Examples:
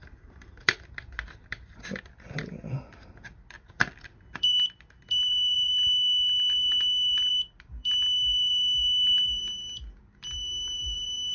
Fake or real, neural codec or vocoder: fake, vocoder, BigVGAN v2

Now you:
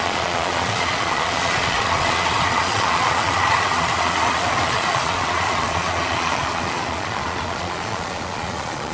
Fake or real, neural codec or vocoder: fake, vocoder, Vocos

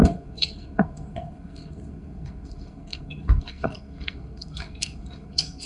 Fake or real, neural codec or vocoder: fake, codec, SNAC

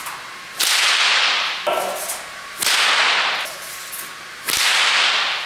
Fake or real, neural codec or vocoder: real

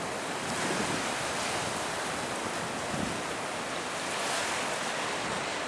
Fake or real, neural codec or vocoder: real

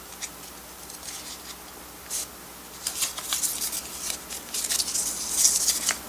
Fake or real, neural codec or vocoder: real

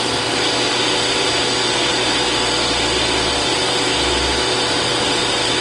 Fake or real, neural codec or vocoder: real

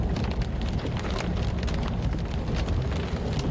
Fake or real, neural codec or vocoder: real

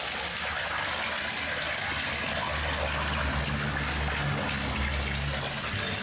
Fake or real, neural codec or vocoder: real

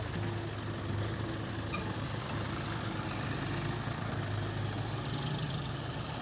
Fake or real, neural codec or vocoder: real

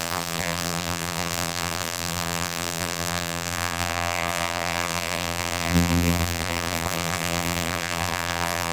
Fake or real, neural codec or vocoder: fake, vocoder, BigVGAN v2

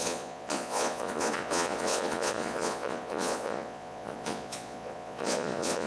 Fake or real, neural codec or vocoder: fake, vocoder, Vocos